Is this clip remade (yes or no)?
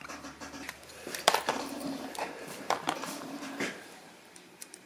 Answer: yes